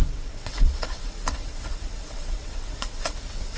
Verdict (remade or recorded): remade